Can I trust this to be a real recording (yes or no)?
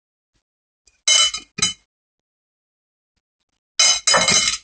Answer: yes